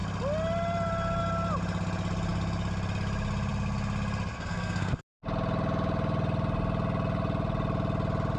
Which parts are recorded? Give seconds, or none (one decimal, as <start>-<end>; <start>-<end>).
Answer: 0.0-4.3; 5.0-8.4